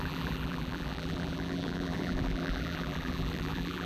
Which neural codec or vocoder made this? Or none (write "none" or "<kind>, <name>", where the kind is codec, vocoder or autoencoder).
vocoder, BigVGAN v2